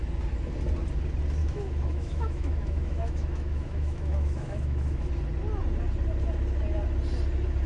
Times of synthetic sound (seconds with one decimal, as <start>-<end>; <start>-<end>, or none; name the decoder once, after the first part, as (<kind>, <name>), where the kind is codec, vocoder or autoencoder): 1.4-5.1 (autoencoder, DAC-VAE)